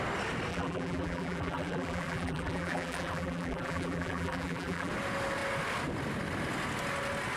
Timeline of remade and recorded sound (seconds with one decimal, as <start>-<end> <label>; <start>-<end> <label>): 0.0-0.5 recorded; 0.5-4.9 remade; 4.9-7.4 recorded